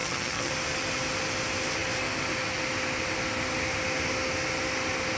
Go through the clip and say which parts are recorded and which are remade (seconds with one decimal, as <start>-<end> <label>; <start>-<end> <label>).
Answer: 0.0-0.5 remade; 0.5-5.2 recorded